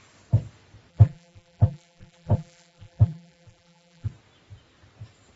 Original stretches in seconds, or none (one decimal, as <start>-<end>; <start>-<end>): 0.0-0.9; 4.1-5.4